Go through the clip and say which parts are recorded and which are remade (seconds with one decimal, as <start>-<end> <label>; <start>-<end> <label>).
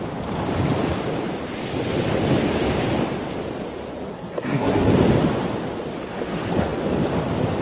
0.0-4.1 recorded; 4.1-4.9 remade; 4.9-7.6 recorded